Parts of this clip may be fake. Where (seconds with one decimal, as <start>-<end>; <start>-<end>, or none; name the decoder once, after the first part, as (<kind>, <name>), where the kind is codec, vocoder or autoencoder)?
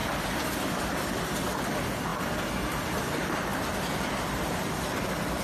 0.8-3.5 (vocoder, BigVGAN v2); 4.1-5.4